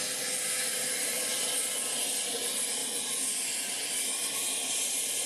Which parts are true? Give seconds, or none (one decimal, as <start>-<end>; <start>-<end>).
0.0-5.3